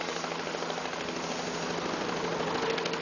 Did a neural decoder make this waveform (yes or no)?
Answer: no